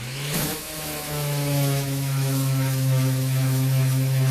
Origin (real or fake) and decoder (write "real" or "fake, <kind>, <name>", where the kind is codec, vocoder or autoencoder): fake, autoencoder, DAC-VAE